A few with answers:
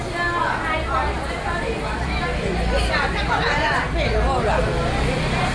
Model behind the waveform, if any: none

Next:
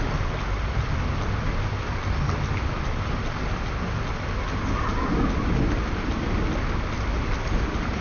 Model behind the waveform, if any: none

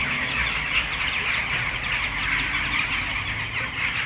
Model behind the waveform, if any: none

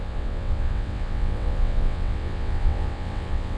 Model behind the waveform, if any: vocoder, WaveNeXt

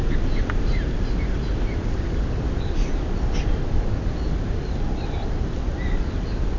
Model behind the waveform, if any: none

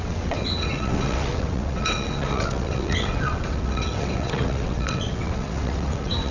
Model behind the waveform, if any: vocoder, WaveNeXt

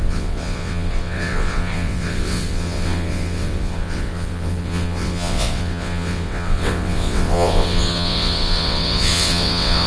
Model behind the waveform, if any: vocoder, WaveNeXt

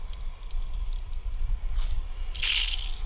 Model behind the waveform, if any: none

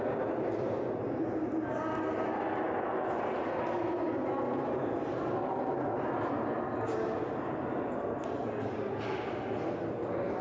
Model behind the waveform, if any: none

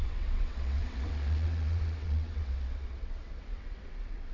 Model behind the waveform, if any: vocoder, WaveNeXt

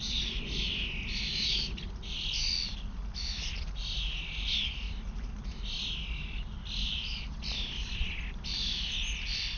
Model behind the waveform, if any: none